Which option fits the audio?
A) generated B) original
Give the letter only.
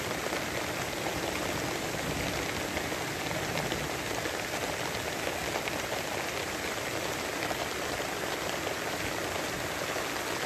B